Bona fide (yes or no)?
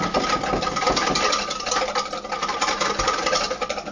yes